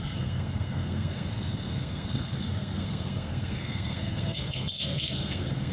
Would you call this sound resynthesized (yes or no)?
yes